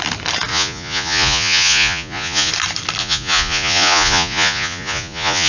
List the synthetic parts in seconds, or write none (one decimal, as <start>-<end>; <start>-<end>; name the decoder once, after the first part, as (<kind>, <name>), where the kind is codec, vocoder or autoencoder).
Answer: 0.5-2.5 (vocoder, Vocos); 3.0-5.5